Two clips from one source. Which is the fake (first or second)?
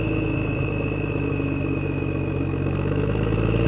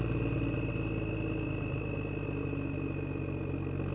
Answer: first